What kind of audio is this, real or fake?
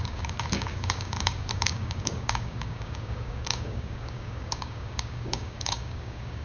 fake